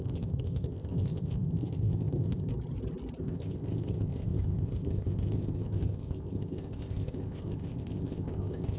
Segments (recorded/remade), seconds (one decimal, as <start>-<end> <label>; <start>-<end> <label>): 0.0-2.5 remade; 2.5-3.2 recorded; 3.2-8.8 remade